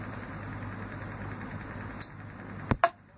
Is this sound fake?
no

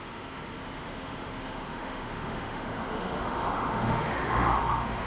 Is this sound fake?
yes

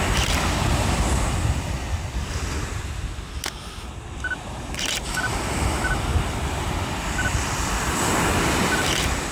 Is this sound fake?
no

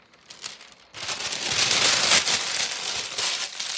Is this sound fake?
no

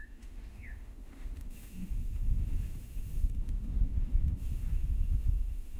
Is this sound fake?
yes